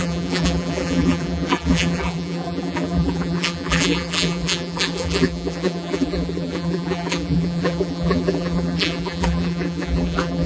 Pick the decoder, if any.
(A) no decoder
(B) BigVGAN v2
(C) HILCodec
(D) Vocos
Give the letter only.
B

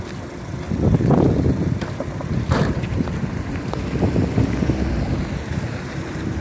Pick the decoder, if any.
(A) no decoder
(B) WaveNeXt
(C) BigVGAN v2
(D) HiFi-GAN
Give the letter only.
C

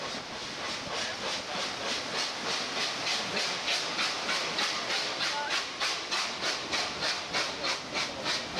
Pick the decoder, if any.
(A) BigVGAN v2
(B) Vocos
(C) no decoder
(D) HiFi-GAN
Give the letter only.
C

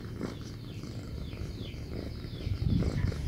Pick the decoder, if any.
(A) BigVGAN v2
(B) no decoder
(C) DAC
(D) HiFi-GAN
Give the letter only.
B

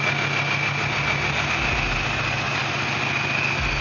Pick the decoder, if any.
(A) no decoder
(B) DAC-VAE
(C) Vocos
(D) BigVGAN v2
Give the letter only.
A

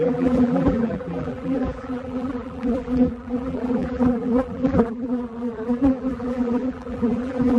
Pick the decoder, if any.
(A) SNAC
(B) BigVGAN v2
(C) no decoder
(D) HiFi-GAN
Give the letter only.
B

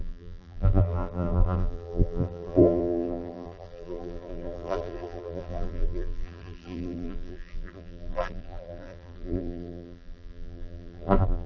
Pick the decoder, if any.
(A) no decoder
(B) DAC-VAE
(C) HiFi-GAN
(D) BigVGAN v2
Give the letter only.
D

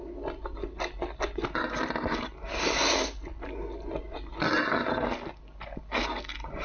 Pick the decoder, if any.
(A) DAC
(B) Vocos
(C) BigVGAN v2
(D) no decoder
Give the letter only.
D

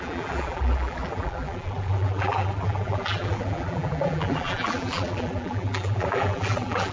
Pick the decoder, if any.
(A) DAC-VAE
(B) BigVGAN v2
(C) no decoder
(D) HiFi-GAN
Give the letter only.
B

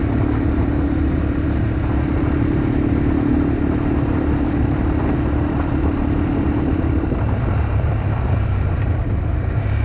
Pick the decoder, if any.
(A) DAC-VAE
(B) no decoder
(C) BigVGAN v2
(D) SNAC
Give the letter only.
C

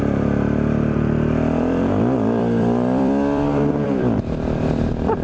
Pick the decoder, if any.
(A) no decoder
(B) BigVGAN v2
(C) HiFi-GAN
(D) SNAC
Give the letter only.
B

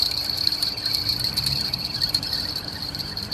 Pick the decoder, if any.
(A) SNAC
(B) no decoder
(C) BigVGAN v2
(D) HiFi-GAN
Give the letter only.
C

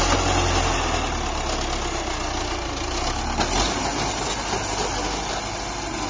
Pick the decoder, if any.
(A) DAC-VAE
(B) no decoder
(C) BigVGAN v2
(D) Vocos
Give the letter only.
B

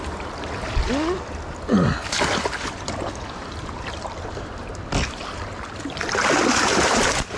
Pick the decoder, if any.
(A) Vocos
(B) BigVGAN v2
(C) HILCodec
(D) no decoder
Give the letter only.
D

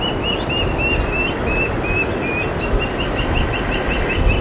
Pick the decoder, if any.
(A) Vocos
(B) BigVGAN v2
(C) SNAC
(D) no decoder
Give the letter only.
D